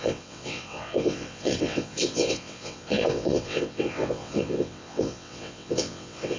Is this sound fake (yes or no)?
yes